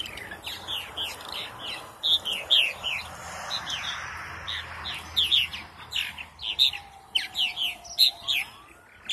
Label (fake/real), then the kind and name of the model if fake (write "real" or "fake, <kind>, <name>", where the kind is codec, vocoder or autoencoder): real